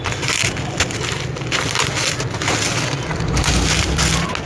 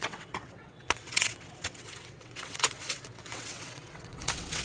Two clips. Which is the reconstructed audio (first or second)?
second